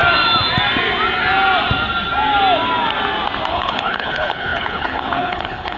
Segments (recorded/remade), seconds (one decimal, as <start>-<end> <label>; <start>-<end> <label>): 0.0-3.5 recorded; 3.5-5.8 remade